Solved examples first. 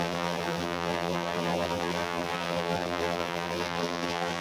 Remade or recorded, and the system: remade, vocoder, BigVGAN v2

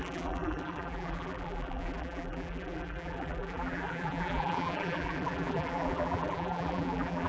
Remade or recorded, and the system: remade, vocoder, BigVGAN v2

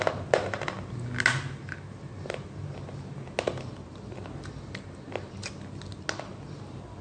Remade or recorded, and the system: recorded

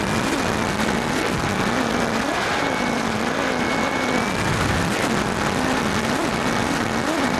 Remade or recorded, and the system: recorded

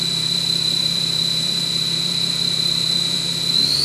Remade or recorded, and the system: remade, vocoder, BigVGAN v2